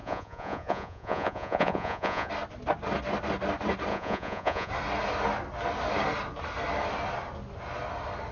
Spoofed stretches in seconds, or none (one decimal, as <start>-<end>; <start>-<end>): 0.0-2.3; 3.9-4.7